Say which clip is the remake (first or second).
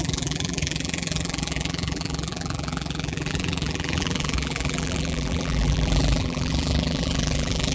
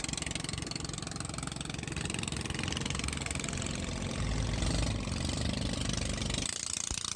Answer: first